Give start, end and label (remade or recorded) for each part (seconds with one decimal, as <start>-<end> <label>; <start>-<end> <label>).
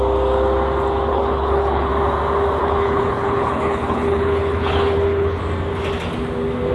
0.0-1.1 recorded; 1.1-1.9 remade; 1.9-2.6 recorded; 2.6-5.4 remade; 5.4-6.7 recorded